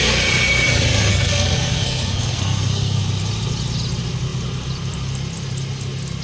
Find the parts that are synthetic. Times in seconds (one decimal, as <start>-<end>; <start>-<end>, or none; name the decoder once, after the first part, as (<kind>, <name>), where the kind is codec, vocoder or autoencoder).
1.1-3.0 (codec, SNAC)